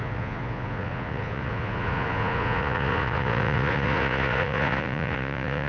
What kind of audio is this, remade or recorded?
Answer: remade